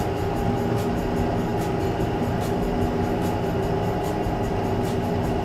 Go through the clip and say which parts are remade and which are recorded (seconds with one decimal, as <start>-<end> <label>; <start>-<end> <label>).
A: 0.0-5.4 recorded